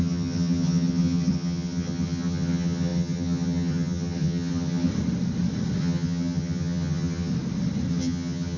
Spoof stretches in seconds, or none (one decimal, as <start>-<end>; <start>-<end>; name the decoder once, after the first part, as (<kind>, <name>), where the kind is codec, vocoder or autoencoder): 0.0-4.9 (vocoder, HiFi-GAN); 5.8-7.3; 7.9-8.6